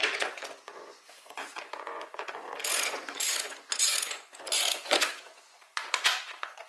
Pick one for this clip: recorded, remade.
remade